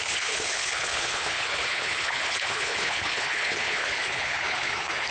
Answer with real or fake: fake